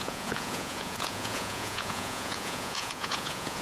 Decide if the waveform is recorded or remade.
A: remade